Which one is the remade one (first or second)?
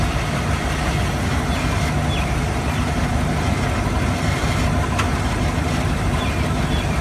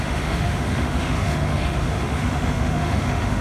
second